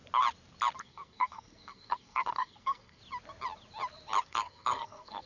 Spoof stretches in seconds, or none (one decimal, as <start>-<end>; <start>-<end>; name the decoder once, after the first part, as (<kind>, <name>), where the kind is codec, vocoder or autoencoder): 0.8-3.0 (codec, SNAC); 4.2-5.3